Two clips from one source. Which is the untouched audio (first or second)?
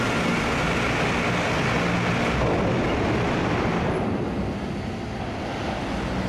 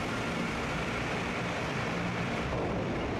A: first